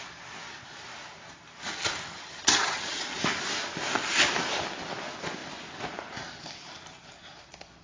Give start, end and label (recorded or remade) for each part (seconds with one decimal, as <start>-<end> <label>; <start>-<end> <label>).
0.0-2.1 recorded; 2.1-3.2 remade; 3.2-7.8 recorded